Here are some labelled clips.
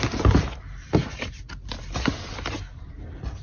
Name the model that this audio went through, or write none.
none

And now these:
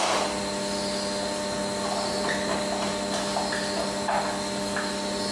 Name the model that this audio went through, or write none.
none